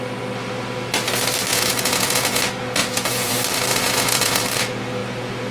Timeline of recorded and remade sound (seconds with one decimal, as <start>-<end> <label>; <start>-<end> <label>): 0.0-1.5 recorded; 1.5-2.4 remade; 2.4-2.8 recorded; 2.8-3.3 remade; 3.3-3.7 recorded; 3.7-4.4 remade; 4.4-5.5 recorded